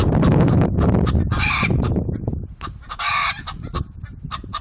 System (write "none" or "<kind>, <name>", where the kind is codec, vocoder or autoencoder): vocoder, BigVGAN v2